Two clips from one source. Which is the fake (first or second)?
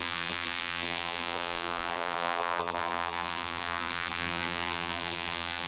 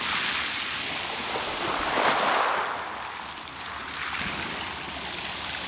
first